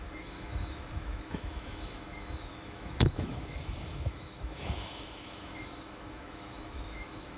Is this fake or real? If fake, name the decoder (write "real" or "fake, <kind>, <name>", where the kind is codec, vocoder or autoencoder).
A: fake, autoencoder, DAC-VAE